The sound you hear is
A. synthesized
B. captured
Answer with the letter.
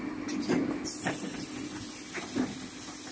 B